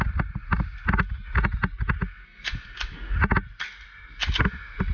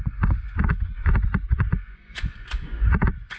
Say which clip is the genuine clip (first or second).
first